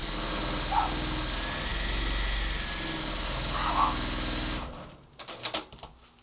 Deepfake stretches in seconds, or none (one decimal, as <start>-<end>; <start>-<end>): none

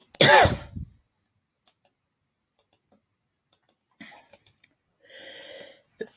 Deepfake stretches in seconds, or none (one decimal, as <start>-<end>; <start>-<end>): none